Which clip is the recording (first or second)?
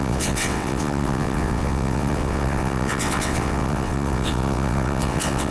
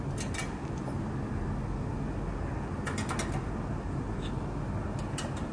second